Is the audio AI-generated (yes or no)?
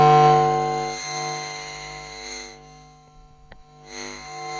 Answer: yes